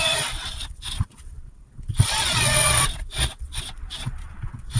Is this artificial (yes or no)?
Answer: yes